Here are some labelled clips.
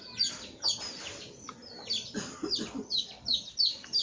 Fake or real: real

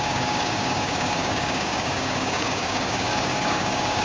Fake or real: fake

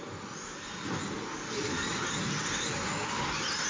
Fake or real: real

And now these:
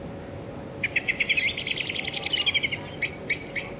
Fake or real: real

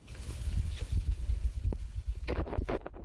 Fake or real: fake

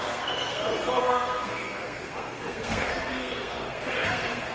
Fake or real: fake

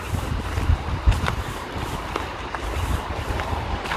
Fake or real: real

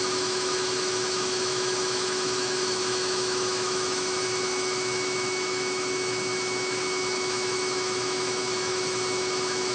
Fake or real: fake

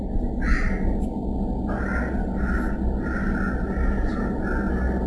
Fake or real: real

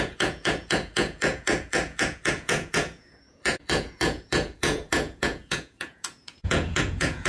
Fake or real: fake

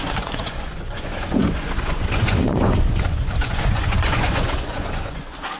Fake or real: fake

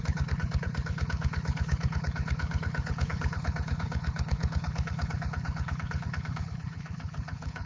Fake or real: fake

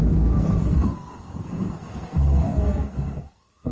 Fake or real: fake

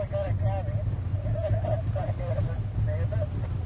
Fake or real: real